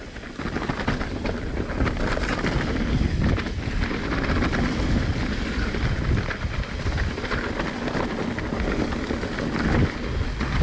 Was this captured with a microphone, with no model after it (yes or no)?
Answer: yes